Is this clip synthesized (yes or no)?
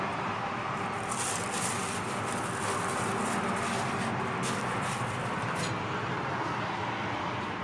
no